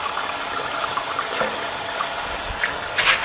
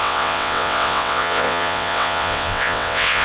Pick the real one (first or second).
first